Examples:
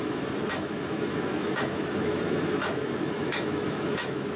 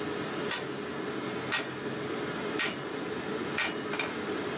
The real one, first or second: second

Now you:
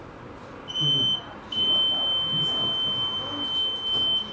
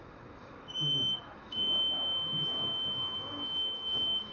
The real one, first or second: first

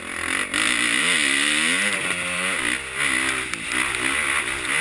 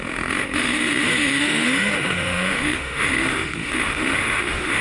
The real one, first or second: first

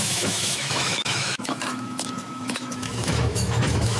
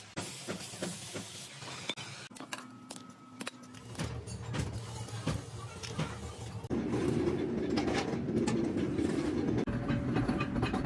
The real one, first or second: second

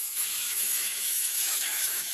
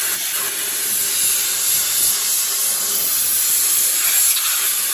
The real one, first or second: second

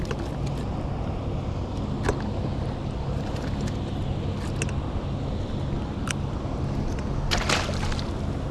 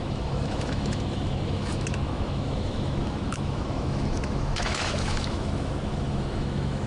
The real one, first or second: first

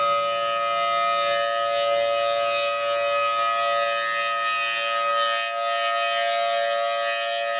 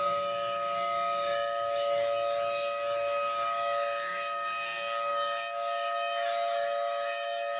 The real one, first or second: first